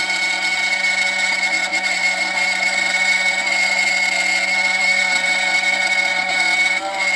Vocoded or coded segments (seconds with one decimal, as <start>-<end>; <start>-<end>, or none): 1.7-3.9; 4.8-5.5; 6.1-6.7